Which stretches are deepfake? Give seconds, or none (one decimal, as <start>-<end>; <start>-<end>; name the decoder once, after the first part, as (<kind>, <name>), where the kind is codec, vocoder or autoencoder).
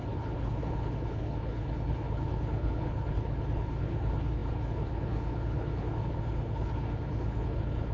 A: 0.0-7.9 (codec, HILCodec)